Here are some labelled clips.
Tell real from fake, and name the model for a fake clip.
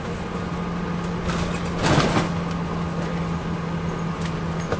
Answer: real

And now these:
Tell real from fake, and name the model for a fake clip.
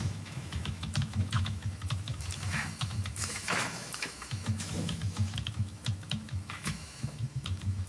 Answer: fake, autoencoder, DAC-VAE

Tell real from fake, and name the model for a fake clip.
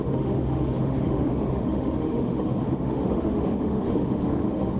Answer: fake, autoencoder, DAC-VAE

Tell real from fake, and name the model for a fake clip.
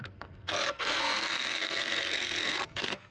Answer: fake, codec, SNAC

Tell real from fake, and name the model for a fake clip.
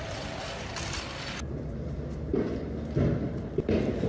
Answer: real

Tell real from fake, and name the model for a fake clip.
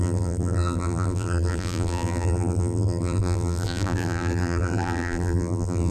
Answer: fake, vocoder, BigVGAN v2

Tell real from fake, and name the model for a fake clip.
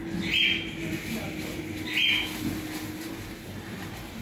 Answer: real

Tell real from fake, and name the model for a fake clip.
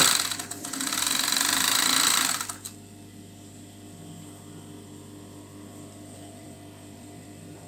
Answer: fake, vocoder, BigVGAN v2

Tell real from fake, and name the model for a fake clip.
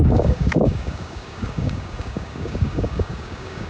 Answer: fake, codec, DAC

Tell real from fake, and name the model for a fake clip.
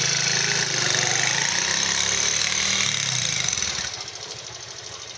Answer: real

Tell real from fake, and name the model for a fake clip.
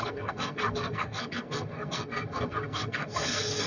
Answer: fake, codec, SNAC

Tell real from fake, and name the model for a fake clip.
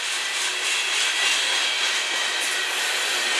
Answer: real